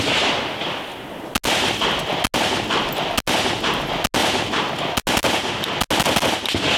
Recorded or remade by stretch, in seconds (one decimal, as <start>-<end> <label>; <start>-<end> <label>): 0.0-6.8 recorded